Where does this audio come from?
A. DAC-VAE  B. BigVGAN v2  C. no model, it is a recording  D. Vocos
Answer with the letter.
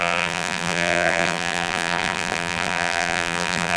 B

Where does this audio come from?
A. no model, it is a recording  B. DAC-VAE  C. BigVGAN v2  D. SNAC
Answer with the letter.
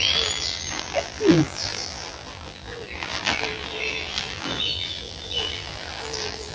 C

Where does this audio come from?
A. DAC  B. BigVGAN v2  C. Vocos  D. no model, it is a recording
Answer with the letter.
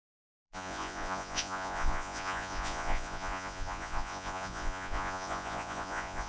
C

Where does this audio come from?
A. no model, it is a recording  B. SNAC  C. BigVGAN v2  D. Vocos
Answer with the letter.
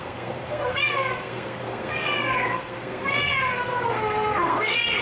B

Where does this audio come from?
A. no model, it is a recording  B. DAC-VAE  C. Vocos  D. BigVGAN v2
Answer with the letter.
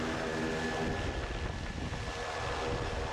A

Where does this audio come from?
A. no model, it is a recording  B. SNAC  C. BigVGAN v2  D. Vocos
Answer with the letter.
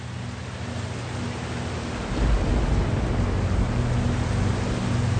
A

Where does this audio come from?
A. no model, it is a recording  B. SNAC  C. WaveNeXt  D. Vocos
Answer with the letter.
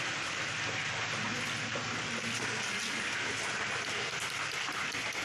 A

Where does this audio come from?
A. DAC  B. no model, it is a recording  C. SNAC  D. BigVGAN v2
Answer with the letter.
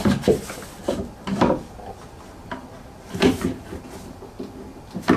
B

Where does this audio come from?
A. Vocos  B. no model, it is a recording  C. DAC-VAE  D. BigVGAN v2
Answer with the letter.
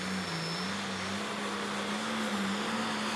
B